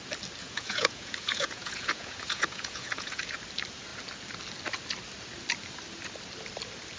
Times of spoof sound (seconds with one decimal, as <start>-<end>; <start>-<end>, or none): 0.4-3.3